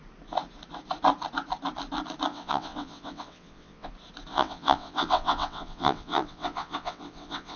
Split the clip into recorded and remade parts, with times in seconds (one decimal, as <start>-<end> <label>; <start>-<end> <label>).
0.0-2.3 recorded; 2.3-3.9 remade; 3.9-4.3 recorded; 4.3-7.6 remade